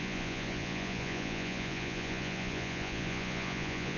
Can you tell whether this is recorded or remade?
remade